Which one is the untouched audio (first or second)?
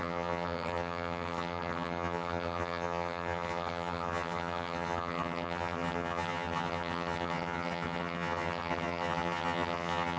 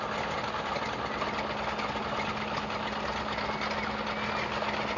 second